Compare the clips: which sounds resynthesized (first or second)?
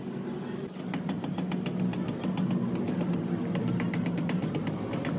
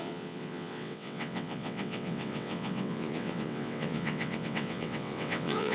second